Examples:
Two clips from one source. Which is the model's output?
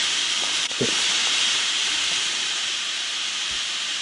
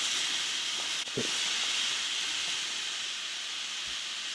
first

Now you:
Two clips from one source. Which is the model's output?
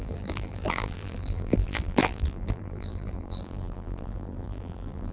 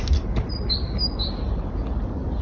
first